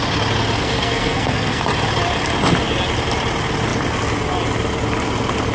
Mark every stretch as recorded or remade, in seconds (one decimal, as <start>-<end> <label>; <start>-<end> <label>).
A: 0.0-0.6 recorded; 0.6-1.6 remade; 1.6-5.5 recorded